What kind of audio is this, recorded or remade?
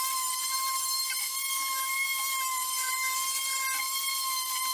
recorded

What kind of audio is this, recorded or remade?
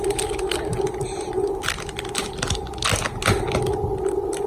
recorded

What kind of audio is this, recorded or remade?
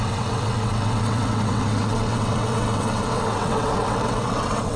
remade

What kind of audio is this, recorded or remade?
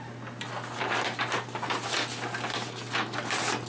recorded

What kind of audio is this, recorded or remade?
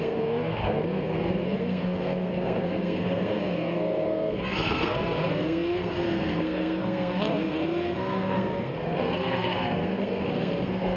remade